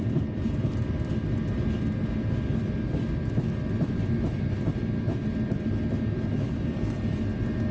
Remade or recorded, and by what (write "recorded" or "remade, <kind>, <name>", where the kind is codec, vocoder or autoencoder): recorded